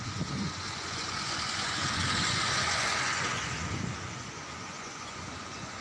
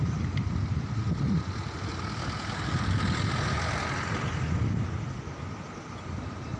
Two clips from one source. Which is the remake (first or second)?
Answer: first